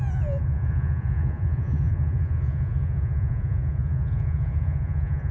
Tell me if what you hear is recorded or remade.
remade